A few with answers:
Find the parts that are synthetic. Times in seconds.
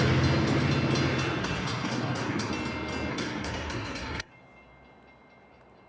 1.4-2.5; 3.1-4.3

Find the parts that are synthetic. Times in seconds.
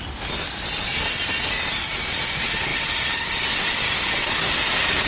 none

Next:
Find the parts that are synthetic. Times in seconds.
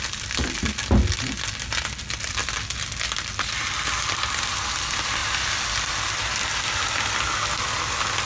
none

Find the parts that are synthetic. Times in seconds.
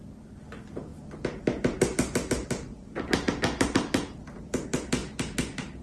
none